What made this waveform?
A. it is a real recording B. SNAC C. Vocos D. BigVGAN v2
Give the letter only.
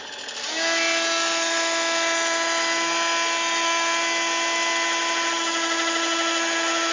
A